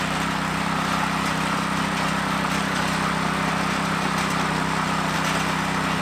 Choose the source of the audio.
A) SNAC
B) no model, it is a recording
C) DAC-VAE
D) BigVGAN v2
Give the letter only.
B